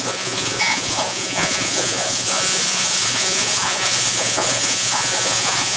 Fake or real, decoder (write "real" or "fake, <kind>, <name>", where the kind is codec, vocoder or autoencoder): fake, vocoder, Vocos